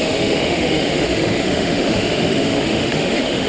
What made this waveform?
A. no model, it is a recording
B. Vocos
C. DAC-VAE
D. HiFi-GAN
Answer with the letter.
C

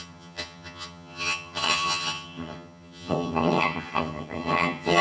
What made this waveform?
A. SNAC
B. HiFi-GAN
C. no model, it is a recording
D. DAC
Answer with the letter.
B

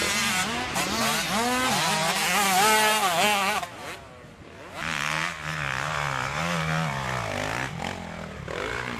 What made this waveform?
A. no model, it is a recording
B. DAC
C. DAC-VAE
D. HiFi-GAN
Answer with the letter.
A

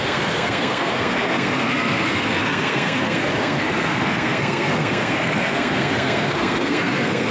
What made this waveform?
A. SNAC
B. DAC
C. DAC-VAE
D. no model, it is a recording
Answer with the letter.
A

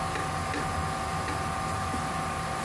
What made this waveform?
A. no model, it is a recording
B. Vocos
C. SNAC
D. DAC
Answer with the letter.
A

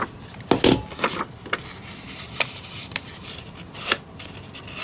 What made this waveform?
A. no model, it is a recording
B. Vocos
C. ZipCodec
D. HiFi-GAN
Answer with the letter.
A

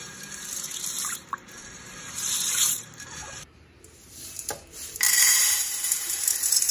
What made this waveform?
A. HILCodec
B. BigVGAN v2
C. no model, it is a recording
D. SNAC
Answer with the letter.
B